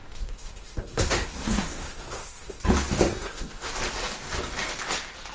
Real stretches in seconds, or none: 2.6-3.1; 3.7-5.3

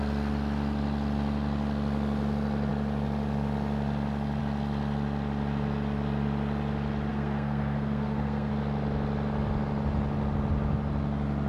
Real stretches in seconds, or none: 0.0-7.1; 8.5-11.5

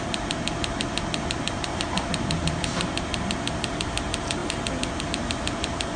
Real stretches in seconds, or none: 4.4-5.0

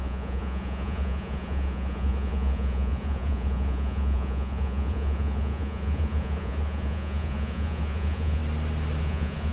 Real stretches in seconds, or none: 8.4-9.0

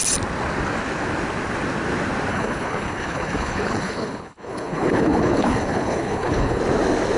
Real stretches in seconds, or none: 0.0-2.3; 6.6-7.2

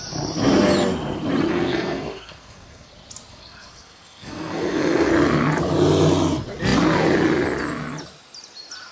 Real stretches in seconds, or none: 0.0-1.5; 2.9-3.3; 5.1-8.9

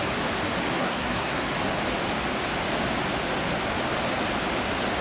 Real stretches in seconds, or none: 0.0-0.7; 1.5-5.0